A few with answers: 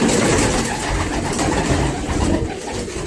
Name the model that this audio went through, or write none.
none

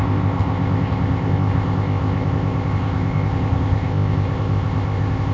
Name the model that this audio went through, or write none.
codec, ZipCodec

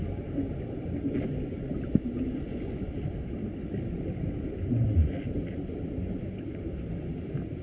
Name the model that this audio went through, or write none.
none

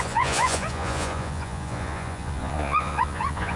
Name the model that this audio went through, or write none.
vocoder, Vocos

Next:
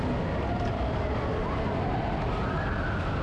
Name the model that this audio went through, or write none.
none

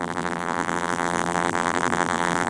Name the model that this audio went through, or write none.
vocoder, BigVGAN v2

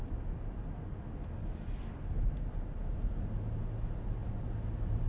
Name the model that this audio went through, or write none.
none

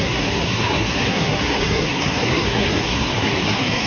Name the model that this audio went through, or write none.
codec, SNAC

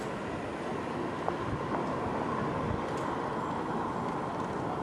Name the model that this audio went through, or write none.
none